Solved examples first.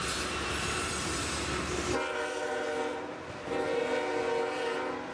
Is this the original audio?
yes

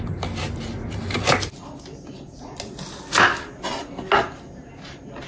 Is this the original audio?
yes